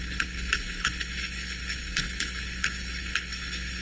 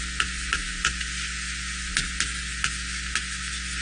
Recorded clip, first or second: second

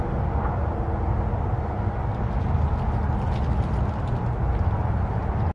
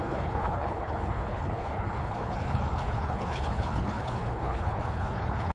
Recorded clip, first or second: first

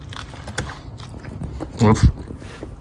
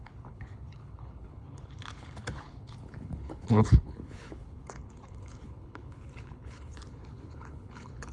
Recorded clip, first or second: first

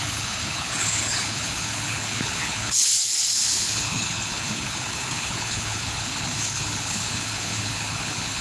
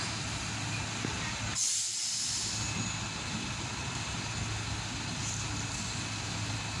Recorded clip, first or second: second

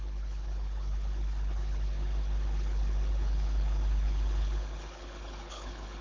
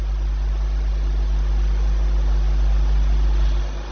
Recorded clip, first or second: second